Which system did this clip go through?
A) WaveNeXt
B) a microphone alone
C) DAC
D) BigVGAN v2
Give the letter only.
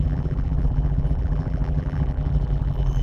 D